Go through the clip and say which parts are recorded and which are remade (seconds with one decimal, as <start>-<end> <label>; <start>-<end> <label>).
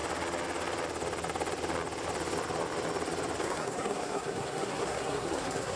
0.0-3.4 recorded; 3.4-5.8 remade